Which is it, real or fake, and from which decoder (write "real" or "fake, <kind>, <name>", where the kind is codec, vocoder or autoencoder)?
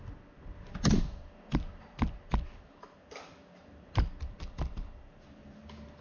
real